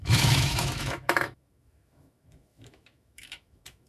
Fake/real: fake